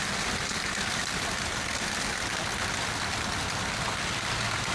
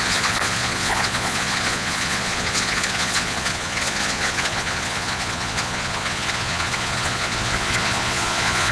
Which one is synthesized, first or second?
second